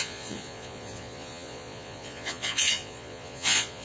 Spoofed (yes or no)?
yes